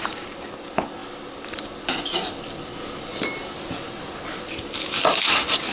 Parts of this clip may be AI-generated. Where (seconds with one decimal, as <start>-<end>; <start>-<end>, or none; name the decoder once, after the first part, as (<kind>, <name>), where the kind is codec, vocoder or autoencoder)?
none